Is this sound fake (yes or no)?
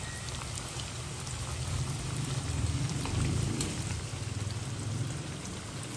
yes